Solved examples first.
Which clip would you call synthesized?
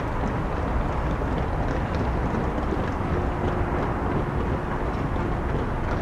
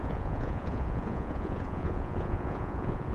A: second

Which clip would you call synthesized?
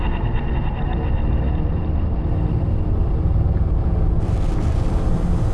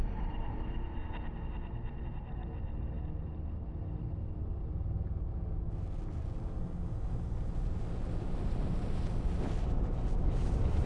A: first